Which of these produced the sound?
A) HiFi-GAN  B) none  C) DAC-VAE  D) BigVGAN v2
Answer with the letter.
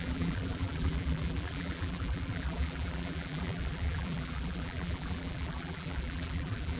D